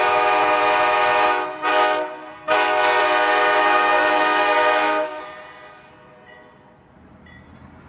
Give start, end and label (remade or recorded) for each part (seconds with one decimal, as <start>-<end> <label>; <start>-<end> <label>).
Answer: 0.0-1.7 recorded; 1.7-3.0 remade; 3.0-3.6 recorded; 3.6-5.2 remade; 5.2-7.9 recorded